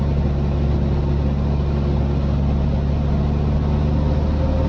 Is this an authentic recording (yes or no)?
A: yes